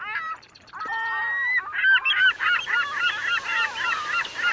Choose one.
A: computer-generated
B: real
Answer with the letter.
B